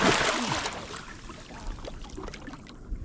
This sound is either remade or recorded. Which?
recorded